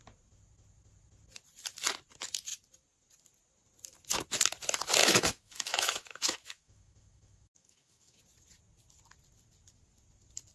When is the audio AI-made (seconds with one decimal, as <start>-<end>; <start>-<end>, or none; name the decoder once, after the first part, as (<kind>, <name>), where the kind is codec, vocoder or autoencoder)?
5.0-8.2 (autoencoder, DAC-VAE)